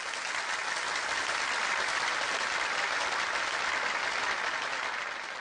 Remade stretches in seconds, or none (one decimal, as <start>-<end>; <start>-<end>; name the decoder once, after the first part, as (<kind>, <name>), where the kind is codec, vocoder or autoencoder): none